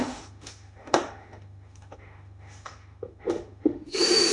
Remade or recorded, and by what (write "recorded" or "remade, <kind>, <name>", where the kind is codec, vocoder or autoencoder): remade, autoencoder, DAC-VAE